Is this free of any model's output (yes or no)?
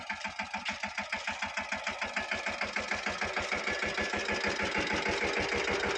yes